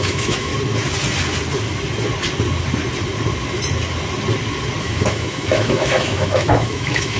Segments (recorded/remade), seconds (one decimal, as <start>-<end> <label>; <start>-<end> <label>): 0.0-0.5 remade; 0.5-4.8 recorded; 4.8-7.2 remade